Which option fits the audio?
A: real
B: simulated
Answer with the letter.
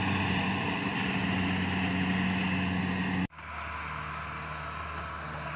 A